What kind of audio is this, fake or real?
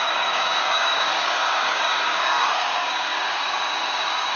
fake